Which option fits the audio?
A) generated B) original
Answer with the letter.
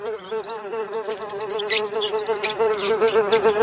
A